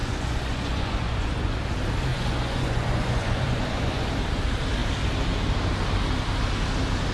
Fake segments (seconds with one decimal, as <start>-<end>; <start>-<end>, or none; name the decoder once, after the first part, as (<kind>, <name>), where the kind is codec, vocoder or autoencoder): 0.0-1.6 (vocoder, Vocos); 2.1-4.1